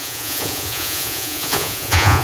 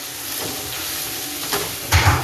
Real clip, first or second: second